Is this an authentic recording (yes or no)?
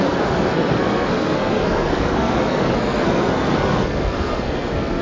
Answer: no